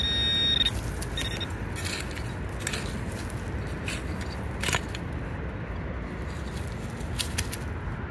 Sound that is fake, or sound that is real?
real